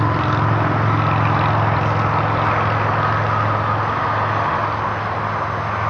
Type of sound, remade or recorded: recorded